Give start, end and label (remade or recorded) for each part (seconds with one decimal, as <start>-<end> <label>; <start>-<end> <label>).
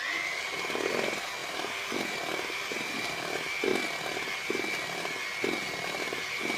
0.0-3.7 remade; 3.7-6.0 recorded; 6.0-6.6 remade